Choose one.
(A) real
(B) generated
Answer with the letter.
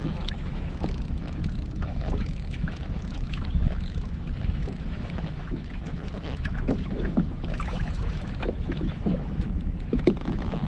B